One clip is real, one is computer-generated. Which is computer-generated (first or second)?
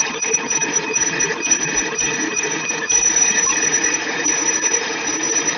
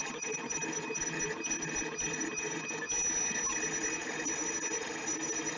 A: first